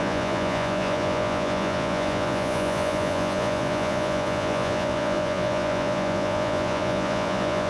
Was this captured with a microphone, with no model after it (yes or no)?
no